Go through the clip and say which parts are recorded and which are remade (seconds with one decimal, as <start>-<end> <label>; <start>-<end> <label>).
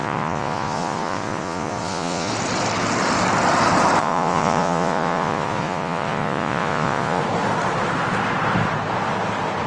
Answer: 0.0-2.3 remade; 2.3-4.0 recorded; 4.0-7.2 remade; 7.2-9.7 recorded